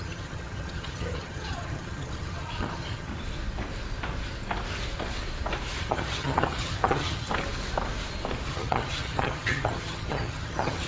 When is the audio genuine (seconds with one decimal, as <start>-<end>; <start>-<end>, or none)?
3.1-5.8; 7.3-8.5